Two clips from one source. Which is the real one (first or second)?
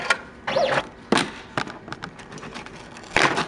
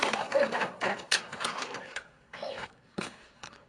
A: first